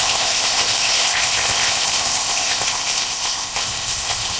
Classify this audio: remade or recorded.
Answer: remade